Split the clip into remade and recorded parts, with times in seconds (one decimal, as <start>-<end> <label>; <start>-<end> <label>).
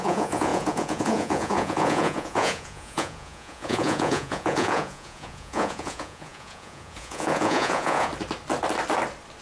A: 0.0-8.1 remade; 8.1-9.4 recorded